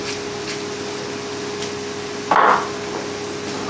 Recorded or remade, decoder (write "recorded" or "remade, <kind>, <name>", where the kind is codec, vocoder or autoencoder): recorded